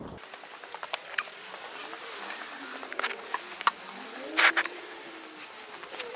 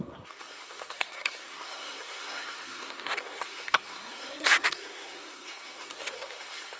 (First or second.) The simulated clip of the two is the second